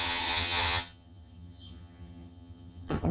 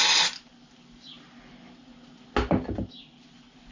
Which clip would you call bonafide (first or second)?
second